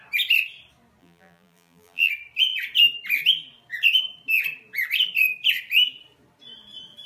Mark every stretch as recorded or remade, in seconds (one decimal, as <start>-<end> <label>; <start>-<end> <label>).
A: 0.0-1.0 recorded; 1.0-2.1 remade; 2.1-7.1 recorded